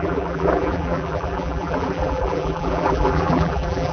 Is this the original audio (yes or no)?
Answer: no